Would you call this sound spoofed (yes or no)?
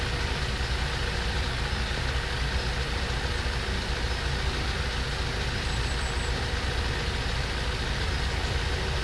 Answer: no